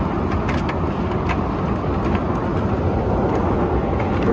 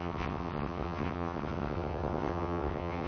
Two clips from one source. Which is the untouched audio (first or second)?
first